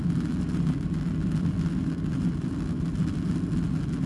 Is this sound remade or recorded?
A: recorded